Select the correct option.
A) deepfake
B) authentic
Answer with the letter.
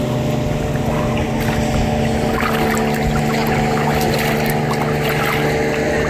B